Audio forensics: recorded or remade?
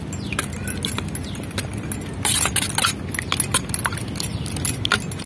recorded